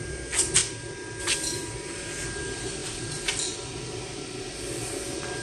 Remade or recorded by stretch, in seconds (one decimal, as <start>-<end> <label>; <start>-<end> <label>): 0.0-5.4 recorded

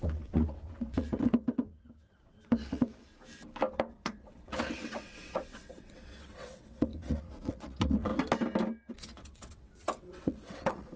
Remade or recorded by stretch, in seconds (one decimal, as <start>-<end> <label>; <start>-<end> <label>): 0.0-3.1 remade; 3.1-3.9 recorded; 3.9-8.1 remade; 8.1-8.9 recorded; 8.9-11.0 remade

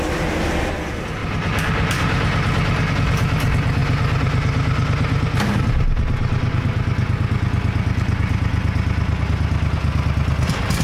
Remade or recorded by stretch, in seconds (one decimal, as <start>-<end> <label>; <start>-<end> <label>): 0.0-10.8 recorded

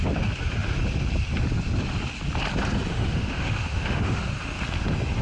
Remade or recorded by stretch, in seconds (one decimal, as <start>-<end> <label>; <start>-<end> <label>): 0.0-2.9 recorded; 2.9-4.2 remade; 4.2-5.2 recorded

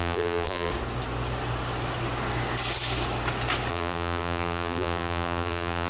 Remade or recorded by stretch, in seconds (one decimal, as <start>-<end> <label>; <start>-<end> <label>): 0.0-0.7 remade; 0.7-3.7 recorded; 3.7-5.9 remade